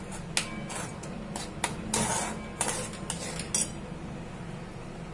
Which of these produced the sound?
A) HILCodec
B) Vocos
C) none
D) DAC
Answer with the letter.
C